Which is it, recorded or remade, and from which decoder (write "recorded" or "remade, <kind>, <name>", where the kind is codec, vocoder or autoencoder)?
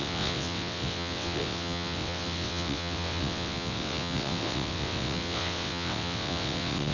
remade, vocoder, WaveNeXt